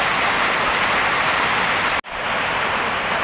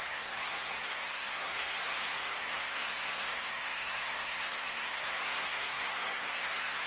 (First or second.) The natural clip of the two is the first